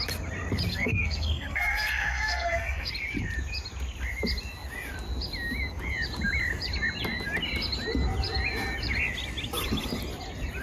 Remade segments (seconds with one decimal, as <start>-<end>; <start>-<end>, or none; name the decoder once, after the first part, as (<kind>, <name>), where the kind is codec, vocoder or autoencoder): 0.7-2.9 (codec, SNAC)